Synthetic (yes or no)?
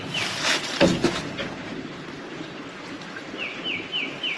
no